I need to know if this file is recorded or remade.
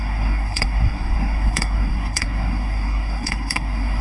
remade